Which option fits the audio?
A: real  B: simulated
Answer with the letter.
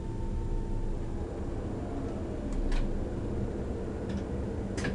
A